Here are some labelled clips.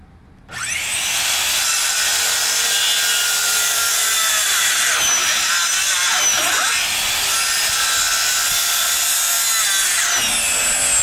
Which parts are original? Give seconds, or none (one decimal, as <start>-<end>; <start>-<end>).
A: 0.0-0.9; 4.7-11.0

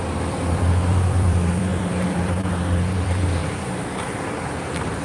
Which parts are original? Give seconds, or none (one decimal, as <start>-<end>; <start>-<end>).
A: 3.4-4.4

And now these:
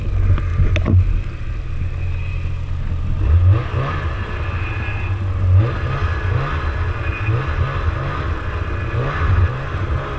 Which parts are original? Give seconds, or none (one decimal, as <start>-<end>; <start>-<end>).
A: 0.0-10.2

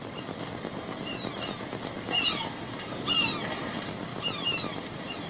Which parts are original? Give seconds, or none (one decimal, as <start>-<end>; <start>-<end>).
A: 0.0-4.1